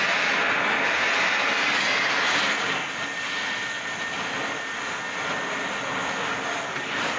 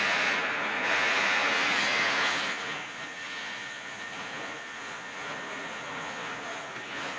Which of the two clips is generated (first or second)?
second